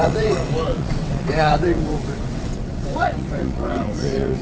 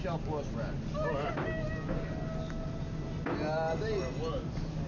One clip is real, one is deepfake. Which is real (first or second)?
second